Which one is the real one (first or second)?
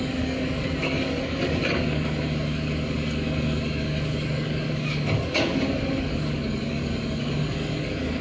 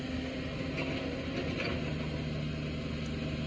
second